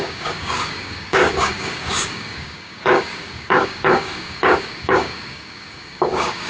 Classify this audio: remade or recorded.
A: remade